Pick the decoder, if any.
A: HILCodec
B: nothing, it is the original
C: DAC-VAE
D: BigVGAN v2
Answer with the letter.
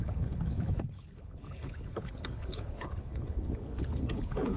A